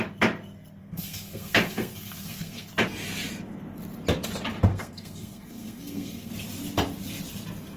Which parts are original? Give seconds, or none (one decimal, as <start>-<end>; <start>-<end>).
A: 0.0-0.8; 2.7-4.7; 6.3-7.8